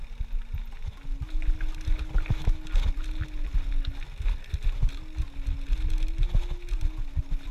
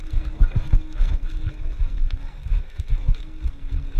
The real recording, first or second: first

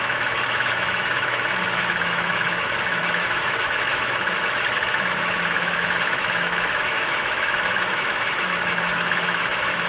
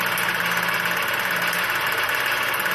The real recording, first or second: second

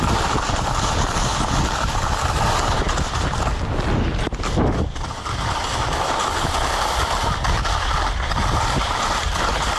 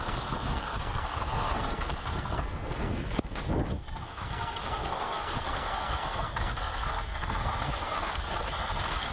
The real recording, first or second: first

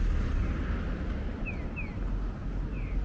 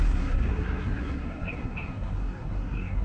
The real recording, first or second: first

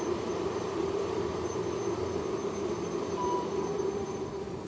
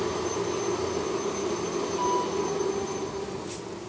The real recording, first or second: second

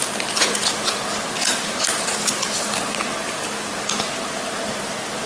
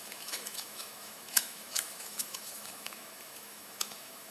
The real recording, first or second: first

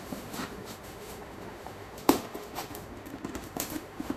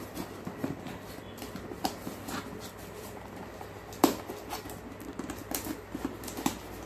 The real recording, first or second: second